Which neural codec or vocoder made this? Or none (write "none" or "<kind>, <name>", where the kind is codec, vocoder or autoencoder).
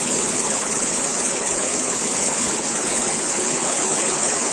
codec, HILCodec